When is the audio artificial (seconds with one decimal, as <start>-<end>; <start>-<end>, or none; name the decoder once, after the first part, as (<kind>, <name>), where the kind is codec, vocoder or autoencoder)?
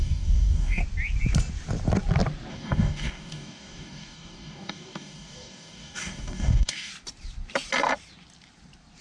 0.0-0.8 (codec, DAC); 2.5-6.9